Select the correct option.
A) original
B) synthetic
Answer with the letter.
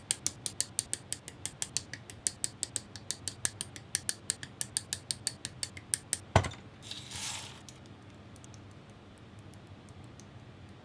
A